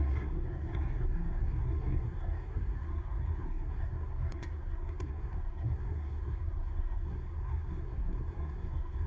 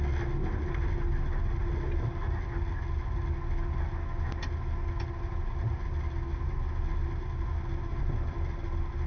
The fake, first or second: first